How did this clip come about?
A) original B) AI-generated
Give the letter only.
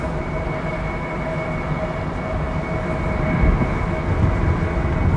A